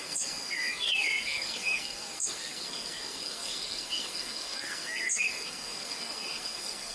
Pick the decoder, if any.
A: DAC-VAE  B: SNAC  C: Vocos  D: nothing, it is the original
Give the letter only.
B